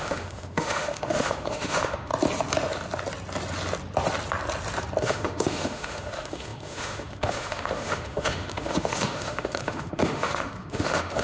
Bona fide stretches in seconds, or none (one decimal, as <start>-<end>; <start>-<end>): 2.1-5.0